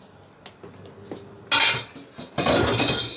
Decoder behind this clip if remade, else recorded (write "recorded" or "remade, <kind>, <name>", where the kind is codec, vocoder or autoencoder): recorded